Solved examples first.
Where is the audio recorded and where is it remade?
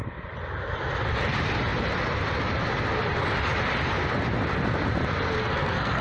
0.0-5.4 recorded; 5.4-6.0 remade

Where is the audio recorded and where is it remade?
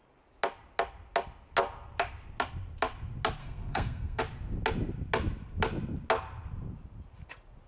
0.0-3.4 recorded; 3.4-4.2 remade; 4.2-7.7 recorded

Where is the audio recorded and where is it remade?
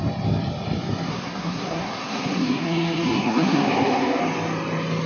0.0-1.1 recorded; 1.1-4.2 remade; 4.2-5.1 recorded